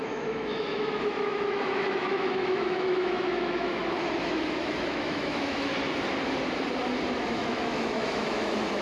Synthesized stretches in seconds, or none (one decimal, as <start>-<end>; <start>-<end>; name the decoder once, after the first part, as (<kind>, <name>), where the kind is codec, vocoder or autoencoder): 0.0-3.8 (autoencoder, DAC-VAE); 4.3-5.7; 7.3-8.8